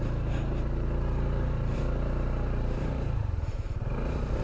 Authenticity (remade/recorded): remade